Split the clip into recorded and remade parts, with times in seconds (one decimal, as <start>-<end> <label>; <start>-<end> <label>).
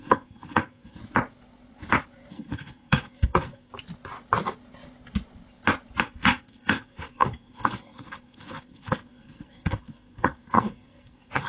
0.0-1.0 remade; 1.0-2.3 recorded; 2.3-3.7 remade; 3.7-6.0 recorded; 6.0-11.5 remade